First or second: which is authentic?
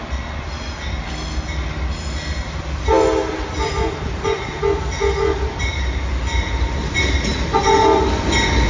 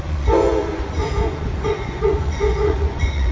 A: first